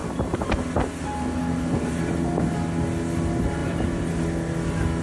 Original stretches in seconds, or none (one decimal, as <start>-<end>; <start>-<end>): 0.0-3.6; 4.1-5.0